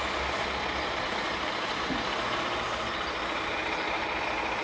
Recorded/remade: recorded